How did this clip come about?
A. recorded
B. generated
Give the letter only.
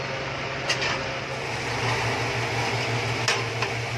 A